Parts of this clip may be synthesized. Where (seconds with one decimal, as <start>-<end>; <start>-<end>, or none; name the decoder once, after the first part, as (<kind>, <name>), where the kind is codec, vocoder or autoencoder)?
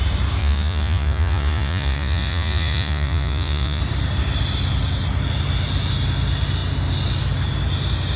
0.4-3.8 (vocoder, Vocos)